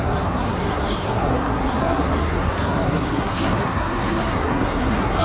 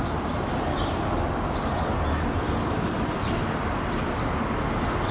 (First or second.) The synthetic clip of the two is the first